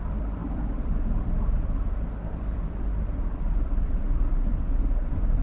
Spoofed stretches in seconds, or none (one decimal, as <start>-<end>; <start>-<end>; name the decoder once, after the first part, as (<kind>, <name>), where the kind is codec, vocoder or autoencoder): 0.0-5.4 (vocoder, BigVGAN v2)